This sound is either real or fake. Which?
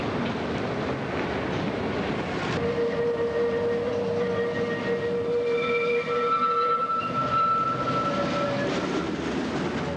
real